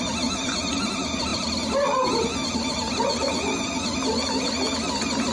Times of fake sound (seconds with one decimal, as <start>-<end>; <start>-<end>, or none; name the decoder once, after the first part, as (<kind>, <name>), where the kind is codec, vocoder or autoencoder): none